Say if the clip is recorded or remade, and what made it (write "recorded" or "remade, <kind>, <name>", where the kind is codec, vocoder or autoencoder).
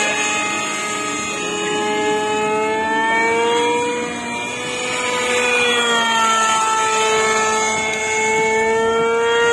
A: recorded